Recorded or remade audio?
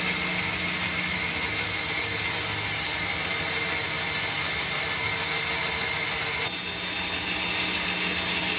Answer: recorded